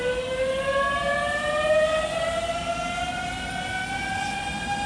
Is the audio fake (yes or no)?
no